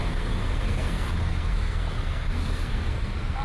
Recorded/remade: remade